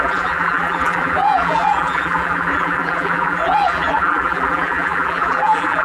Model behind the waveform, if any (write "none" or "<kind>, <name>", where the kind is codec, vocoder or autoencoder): vocoder, BigVGAN v2